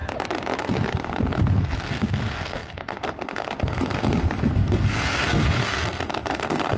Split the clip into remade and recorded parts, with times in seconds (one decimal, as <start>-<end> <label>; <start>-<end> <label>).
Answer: 0.0-0.6 recorded; 0.6-6.8 remade